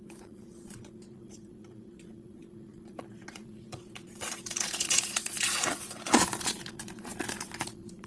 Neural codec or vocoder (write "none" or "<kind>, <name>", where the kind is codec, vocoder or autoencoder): vocoder, Vocos